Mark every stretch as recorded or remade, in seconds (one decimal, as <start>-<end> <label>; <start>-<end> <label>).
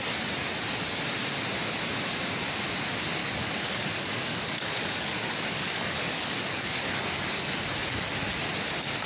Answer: 0.0-3.2 recorded; 3.2-7.4 remade; 7.4-9.1 recorded